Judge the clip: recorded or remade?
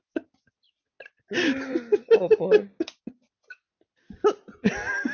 recorded